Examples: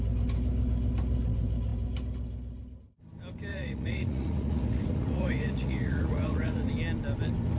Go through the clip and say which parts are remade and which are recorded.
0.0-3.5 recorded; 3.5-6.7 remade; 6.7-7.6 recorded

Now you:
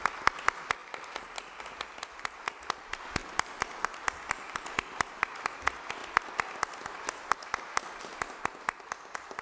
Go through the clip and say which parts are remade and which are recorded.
0.0-0.8 recorded; 0.8-1.6 remade; 1.6-3.2 recorded; 3.2-5.5 remade; 5.5-9.4 recorded

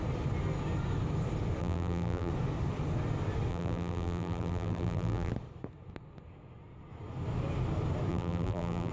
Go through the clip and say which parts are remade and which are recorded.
0.0-1.6 recorded; 1.6-2.3 remade; 2.3-3.5 recorded; 3.5-5.3 remade; 5.3-8.1 recorded; 8.1-8.9 remade

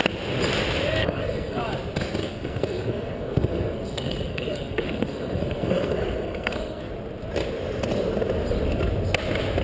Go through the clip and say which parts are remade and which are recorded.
0.0-1.0 recorded; 1.0-1.6 remade; 1.6-2.2 recorded; 2.2-6.9 remade; 6.9-9.6 recorded

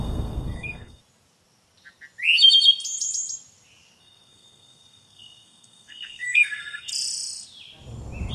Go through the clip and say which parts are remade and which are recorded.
0.0-1.0 remade; 1.0-4.0 recorded; 4.0-6.9 remade; 6.9-8.3 recorded

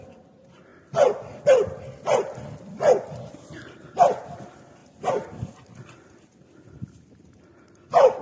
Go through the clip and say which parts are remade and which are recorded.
0.0-8.2 recorded

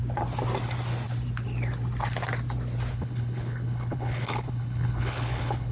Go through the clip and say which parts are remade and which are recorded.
0.0-2.9 recorded; 2.9-5.7 remade